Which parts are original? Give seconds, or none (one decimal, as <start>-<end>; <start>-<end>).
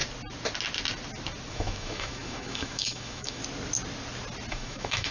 0.0-1.5; 3.4-4.5